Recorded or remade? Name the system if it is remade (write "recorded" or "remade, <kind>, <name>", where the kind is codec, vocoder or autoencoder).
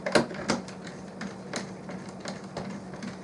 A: recorded